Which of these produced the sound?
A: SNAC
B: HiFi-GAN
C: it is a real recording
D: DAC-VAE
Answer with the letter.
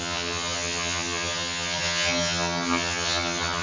B